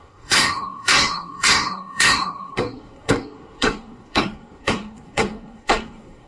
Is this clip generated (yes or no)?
yes